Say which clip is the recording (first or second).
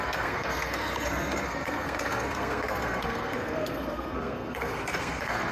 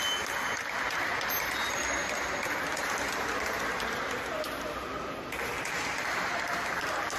second